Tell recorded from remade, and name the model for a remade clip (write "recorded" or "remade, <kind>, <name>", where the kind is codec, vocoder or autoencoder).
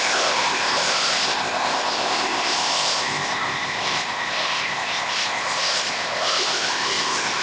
remade, codec, ZipCodec